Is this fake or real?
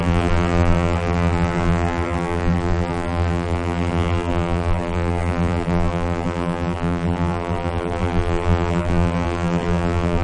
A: fake